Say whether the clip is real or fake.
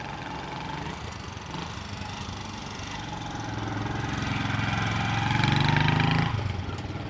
real